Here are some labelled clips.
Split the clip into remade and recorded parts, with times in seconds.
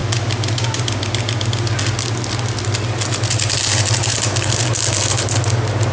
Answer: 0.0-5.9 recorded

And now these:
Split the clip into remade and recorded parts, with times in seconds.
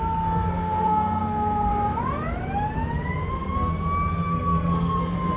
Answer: 0.0-1.7 remade; 1.7-3.3 recorded; 3.3-3.7 remade; 3.7-4.2 recorded; 4.2-5.4 remade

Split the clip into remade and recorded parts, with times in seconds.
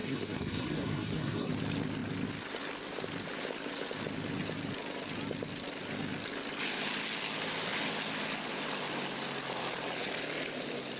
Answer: 0.0-1.5 remade; 1.5-11.0 recorded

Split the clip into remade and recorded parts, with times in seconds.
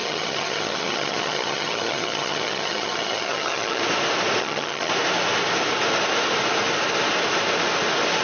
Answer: 0.0-3.8 remade; 3.8-4.4 recorded; 4.4-4.9 remade; 4.9-8.2 recorded